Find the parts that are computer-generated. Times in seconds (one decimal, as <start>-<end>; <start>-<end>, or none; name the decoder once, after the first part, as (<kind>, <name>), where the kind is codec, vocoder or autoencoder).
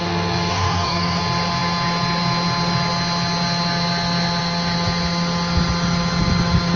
0.5-1.2 (codec, DAC)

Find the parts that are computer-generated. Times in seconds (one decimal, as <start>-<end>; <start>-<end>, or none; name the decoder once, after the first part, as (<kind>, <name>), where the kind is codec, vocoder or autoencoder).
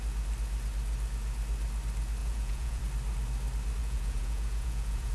2.2-2.8 (vocoder, Vocos); 3.8-5.1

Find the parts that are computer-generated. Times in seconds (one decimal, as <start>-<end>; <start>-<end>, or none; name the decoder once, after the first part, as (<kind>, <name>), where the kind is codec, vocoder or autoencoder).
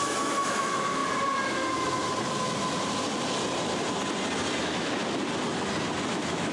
0.0-1.0 (autoencoder, DAC-VAE); 4.6-5.0; 6.1-6.5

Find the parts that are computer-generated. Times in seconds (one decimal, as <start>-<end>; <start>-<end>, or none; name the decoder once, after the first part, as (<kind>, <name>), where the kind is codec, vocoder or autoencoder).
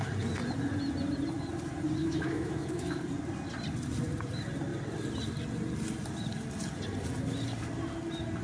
2.0-3.0 (autoencoder, DAC-VAE)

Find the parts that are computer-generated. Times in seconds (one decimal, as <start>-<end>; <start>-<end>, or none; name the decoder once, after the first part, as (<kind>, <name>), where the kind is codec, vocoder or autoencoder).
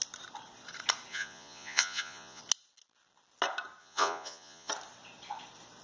1.1-2.4 (vocoder, Vocos); 3.8-4.7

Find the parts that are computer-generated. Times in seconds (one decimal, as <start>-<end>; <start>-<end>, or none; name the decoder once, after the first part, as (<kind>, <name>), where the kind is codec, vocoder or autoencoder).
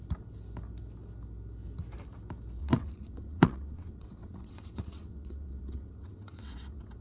2.6-7.0 (vocoder, WaveNeXt)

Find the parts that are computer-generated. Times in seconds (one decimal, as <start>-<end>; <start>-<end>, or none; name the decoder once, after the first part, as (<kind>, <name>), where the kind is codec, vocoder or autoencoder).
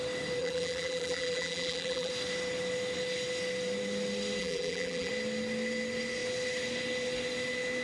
0.4-2.1 (vocoder, BigVGAN v2); 4.4-5.1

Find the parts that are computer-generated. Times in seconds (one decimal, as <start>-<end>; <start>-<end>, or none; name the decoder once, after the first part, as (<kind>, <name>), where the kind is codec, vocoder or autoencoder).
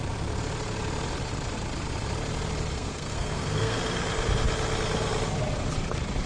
2.7-3.8 (codec, SNAC)